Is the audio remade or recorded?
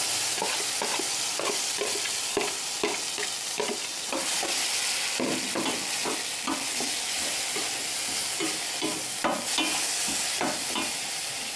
recorded